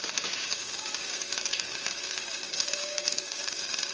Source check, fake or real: fake